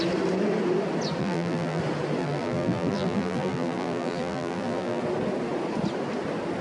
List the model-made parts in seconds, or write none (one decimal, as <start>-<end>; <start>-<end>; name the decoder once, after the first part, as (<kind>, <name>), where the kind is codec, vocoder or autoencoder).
1.2-1.8 (vocoder, BigVGAN v2); 2.2-5.0